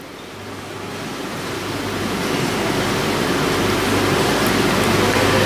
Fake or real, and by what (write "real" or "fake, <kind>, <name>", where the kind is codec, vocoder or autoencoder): real